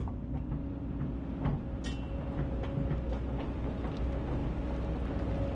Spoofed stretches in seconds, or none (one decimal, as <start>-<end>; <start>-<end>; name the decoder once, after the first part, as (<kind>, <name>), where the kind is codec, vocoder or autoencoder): none